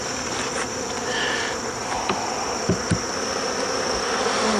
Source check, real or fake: real